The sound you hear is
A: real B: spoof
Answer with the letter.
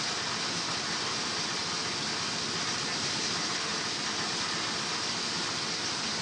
A